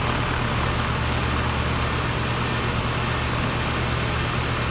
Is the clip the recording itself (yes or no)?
yes